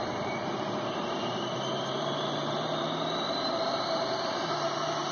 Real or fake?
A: fake